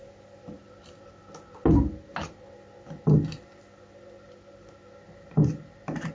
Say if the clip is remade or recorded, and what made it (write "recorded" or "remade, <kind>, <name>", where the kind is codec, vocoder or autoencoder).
recorded